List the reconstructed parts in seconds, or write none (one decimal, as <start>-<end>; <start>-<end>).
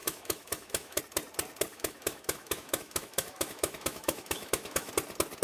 0.0-1.0; 1.7-4.9